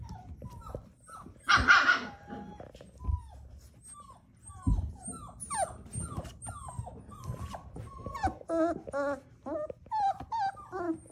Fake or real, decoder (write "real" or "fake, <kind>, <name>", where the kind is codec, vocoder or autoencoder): real